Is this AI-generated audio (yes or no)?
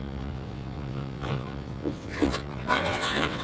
yes